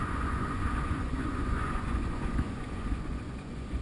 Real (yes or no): no